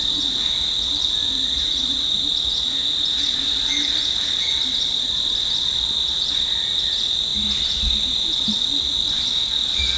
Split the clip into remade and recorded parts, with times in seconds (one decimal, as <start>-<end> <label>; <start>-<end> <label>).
0.0-10.0 recorded